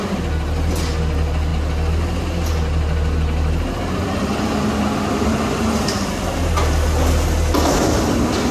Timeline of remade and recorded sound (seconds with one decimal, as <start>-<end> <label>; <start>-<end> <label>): 0.0-8.5 recorded